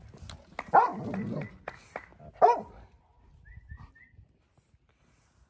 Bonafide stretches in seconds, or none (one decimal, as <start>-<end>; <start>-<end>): 0.0-5.5